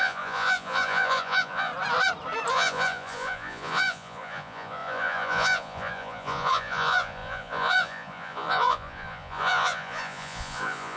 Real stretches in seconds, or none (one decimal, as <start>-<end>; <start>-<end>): 1.7-2.5